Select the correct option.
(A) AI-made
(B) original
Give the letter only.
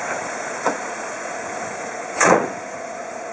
A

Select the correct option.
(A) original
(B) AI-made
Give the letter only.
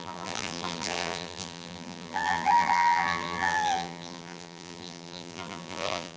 B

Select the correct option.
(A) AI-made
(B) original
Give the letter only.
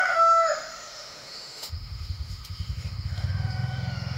A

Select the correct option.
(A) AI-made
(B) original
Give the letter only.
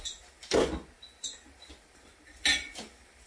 B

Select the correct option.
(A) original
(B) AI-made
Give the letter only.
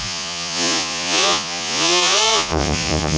B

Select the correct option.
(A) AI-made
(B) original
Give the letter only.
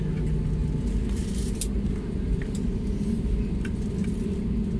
B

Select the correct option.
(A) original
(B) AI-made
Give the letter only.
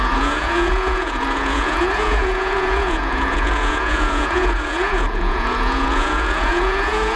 B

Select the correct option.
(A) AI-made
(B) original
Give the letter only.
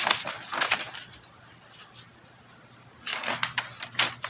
B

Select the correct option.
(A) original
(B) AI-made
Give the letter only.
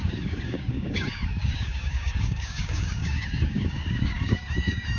B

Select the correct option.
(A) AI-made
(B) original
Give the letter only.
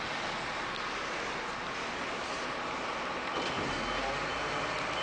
A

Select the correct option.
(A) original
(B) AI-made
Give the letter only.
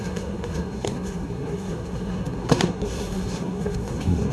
B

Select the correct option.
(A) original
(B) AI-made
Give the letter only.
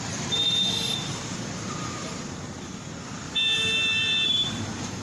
B